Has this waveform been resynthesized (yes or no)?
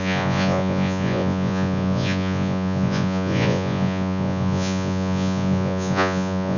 yes